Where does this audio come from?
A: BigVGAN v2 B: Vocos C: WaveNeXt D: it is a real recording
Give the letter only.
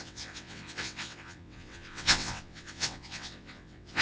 C